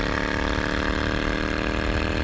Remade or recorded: recorded